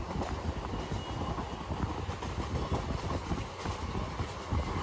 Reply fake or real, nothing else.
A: real